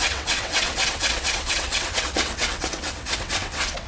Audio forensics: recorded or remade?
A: remade